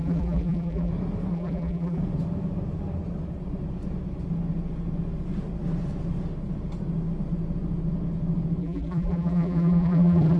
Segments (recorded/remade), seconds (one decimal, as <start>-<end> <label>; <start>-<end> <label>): 0.0-0.9 remade; 0.9-1.3 recorded; 1.3-2.0 remade; 2.0-8.6 recorded; 8.6-10.4 remade